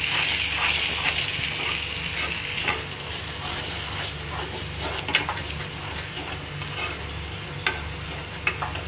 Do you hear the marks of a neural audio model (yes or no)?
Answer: no